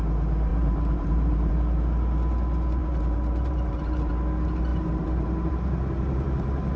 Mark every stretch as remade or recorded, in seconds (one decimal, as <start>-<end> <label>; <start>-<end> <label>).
0.0-0.5 recorded; 0.5-1.5 remade; 1.5-2.8 recorded; 2.8-4.1 remade; 4.1-4.7 recorded; 4.7-6.8 remade